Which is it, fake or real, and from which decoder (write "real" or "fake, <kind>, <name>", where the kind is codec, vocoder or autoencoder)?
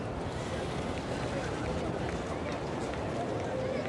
real